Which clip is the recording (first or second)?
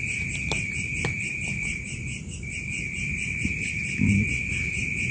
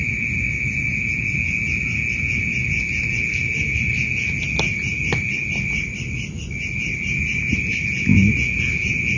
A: second